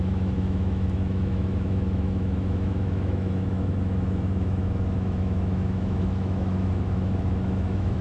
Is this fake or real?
fake